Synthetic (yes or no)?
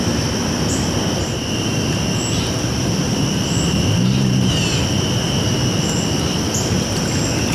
no